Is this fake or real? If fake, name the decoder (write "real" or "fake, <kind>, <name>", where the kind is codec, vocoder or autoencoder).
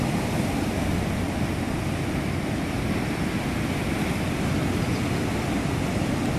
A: real